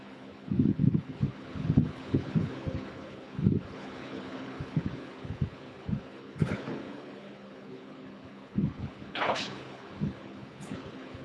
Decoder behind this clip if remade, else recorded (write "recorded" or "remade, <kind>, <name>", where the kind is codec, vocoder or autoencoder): remade, codec, HILCodec